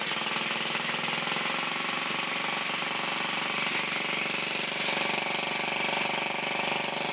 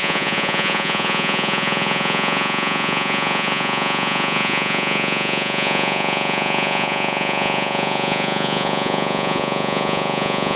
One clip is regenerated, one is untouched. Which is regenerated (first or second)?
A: second